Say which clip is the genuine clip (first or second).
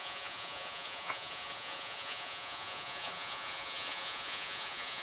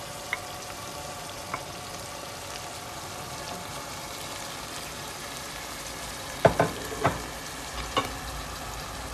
second